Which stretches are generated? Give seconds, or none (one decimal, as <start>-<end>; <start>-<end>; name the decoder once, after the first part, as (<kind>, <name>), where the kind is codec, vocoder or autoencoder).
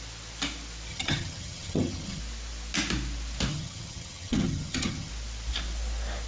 0.9-2.2 (vocoder, HiFi-GAN); 3.5-5.1